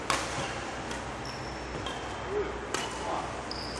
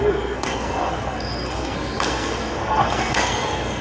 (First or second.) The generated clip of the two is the second